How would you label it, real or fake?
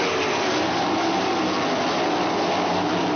real